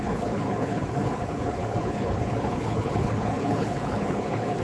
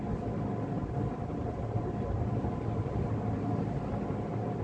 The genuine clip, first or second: second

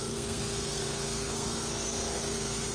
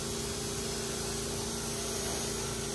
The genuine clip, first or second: second